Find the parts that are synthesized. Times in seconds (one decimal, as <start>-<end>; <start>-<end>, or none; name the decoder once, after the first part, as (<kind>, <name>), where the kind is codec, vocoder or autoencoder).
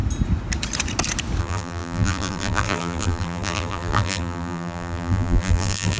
1.4-6.0 (vocoder, BigVGAN v2)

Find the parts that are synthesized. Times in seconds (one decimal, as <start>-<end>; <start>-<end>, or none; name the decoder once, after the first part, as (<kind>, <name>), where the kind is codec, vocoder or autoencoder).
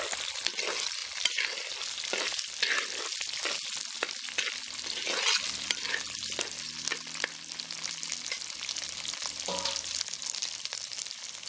none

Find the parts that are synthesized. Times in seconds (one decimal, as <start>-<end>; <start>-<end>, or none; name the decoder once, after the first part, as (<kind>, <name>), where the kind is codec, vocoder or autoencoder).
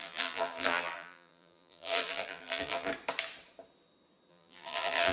0.0-2.9 (vocoder, BigVGAN v2); 4.3-5.1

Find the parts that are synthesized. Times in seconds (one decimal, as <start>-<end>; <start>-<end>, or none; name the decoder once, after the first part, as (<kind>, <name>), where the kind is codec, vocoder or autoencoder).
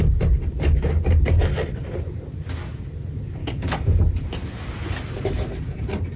3.4-4.0 (codec, DAC)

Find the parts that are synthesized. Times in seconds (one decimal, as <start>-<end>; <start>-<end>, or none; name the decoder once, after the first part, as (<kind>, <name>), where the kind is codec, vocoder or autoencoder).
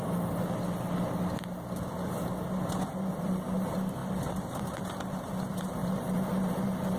2.7-7.0 (vocoder, BigVGAN v2)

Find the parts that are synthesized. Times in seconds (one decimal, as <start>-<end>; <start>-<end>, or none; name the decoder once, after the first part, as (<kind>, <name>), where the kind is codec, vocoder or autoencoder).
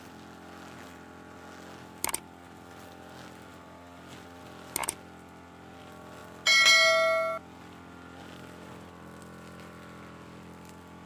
none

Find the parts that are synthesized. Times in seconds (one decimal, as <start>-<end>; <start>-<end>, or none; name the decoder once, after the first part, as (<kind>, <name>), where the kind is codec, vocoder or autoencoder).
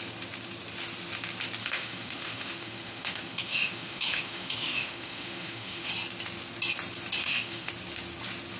1.6-5.9 (autoencoder, DAC-VAE); 7.2-7.7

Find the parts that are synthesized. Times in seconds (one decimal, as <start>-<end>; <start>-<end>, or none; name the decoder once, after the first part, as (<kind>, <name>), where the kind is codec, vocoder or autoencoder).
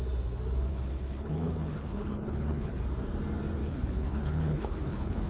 0.7-2.8 (codec, HILCodec); 3.6-5.3